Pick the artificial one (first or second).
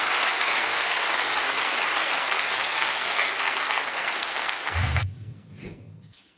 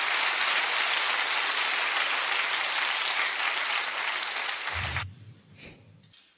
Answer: first